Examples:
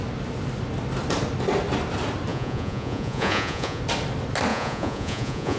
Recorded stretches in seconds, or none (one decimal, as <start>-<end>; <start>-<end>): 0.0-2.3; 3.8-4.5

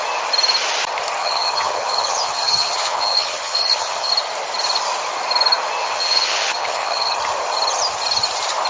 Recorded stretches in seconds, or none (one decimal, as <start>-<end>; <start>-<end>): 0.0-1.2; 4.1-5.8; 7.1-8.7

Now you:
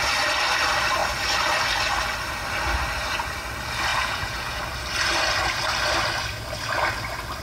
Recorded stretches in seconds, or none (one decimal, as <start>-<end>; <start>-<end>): 0.0-3.9; 4.6-7.4

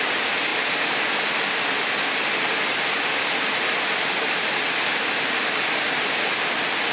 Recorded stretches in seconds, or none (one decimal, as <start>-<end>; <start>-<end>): 0.0-6.9

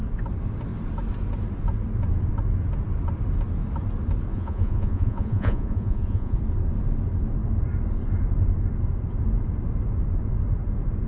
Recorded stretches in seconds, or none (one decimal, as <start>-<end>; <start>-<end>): 0.0-4.3; 6.4-11.1

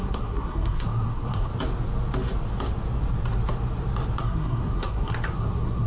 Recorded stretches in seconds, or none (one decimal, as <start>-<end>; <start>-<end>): 1.5-4.2